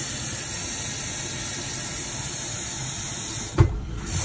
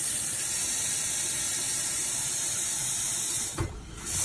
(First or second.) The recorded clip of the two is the first